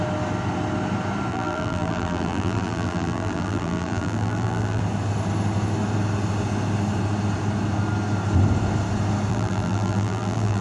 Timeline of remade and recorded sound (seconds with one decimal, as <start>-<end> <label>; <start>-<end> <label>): 0.0-1.3 recorded; 1.3-4.8 remade; 4.8-9.3 recorded; 9.3-10.6 remade